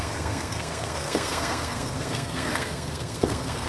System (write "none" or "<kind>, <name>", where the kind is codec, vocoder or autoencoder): codec, SNAC